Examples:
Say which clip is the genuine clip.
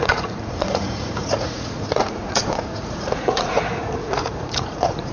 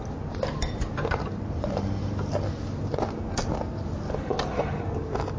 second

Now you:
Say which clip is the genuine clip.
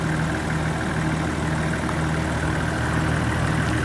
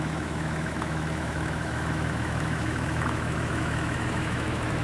first